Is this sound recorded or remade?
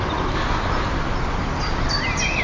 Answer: recorded